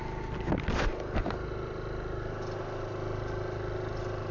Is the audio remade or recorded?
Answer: recorded